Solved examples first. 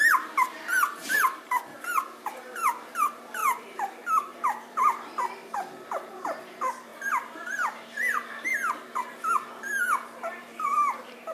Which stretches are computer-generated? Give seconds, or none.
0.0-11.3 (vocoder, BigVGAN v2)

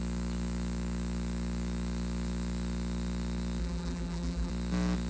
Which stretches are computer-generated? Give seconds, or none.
3.6-4.5 (vocoder, BigVGAN v2)

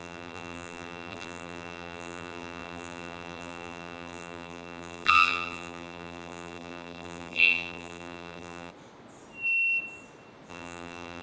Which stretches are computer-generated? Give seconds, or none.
0.0-8.7 (vocoder, BigVGAN v2); 10.5-11.2

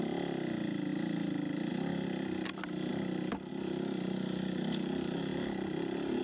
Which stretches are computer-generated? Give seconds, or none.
2.9-3.5 (vocoder, BigVGAN v2)

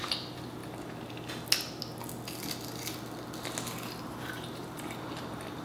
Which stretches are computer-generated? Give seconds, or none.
0.0-0.6 (vocoder, BigVGAN v2); 4.0-5.6

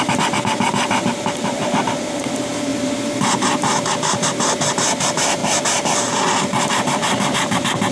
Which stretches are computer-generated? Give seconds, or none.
0.0-2.7 (vocoder, BigVGAN v2); 3.2-5.4; 6.7-7.9